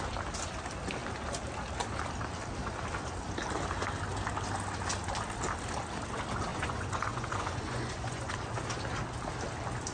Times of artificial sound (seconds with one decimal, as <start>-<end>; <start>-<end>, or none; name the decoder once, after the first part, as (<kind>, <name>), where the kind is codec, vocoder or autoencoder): 6.5-8.3 (vocoder, Vocos)